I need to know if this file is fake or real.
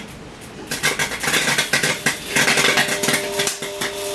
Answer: real